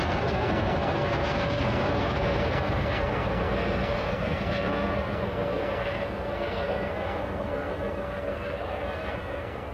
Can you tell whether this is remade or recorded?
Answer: remade